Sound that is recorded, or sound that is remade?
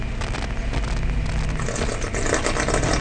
recorded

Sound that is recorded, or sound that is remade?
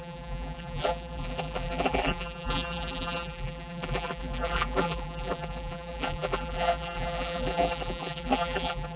remade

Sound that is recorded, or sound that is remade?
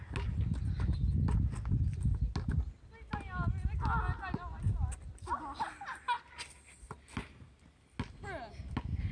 recorded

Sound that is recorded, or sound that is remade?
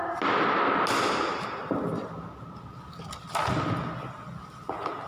recorded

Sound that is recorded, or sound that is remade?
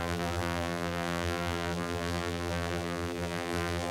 remade